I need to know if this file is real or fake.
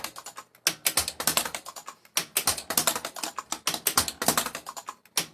real